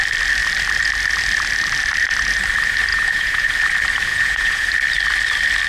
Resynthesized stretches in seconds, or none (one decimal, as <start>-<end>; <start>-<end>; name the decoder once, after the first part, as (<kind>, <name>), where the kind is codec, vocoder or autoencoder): 2.9-3.5 (vocoder, Vocos); 4.1-4.7